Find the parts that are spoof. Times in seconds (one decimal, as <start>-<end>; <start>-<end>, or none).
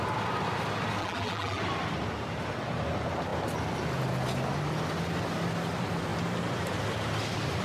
1.0-1.6